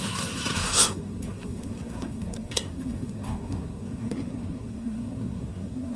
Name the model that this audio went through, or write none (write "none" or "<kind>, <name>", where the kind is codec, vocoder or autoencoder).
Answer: codec, SNAC